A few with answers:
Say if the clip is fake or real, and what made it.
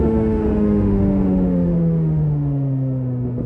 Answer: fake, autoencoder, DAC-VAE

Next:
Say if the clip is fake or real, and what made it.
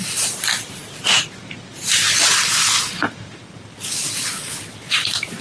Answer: real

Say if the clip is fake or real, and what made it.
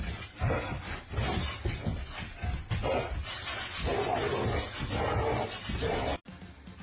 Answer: real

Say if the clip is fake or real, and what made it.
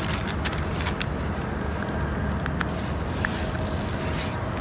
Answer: real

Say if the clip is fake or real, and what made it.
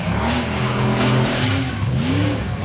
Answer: fake, codec, DAC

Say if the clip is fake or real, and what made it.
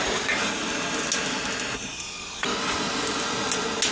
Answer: real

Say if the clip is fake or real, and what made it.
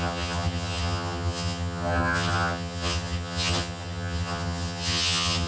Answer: fake, vocoder, HiFi-GAN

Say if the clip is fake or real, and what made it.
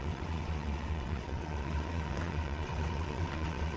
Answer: fake, vocoder, WaveNeXt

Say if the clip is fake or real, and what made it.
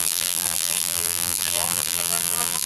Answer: fake, vocoder, BigVGAN v2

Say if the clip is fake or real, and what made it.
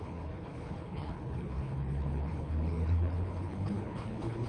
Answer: fake, codec, HILCodec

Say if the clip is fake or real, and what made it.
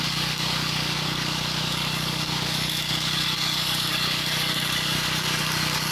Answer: fake, codec, DAC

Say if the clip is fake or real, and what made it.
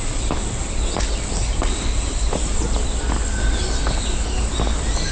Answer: real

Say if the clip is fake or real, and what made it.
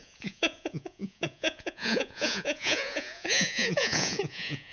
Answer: fake, vocoder, Vocos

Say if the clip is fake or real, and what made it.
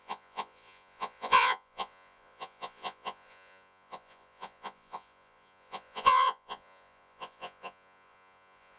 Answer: fake, vocoder, Vocos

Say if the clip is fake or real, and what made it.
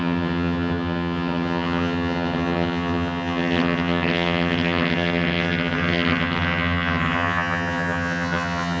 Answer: fake, vocoder, HiFi-GAN